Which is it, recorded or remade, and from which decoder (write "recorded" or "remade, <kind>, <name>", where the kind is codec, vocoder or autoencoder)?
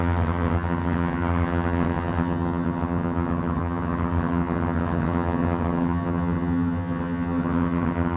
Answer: remade, vocoder, HiFi-GAN